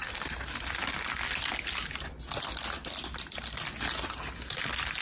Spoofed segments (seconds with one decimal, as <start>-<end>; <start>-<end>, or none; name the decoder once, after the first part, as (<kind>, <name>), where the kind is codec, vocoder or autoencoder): none